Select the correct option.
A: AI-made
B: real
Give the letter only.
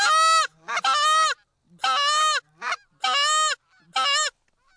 B